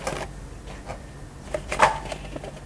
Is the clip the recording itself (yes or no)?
yes